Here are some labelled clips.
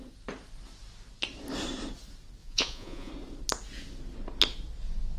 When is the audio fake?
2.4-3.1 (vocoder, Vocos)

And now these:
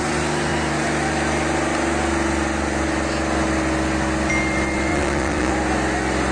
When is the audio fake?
4.9-5.5 (vocoder, Vocos)

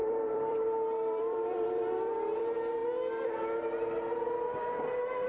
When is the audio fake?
0.0-2.4 (vocoder, BigVGAN v2)

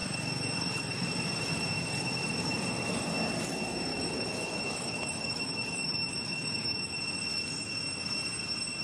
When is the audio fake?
3.9-7.0 (autoencoder, DAC-VAE)

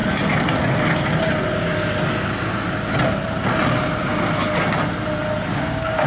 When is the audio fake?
5.5-6.1 (codec, DAC)